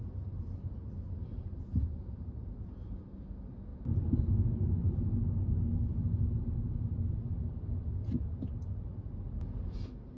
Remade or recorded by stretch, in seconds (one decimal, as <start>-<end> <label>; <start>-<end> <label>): 0.0-10.2 recorded